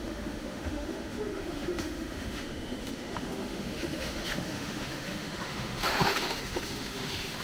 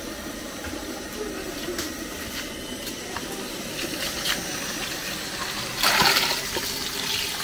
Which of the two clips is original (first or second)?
second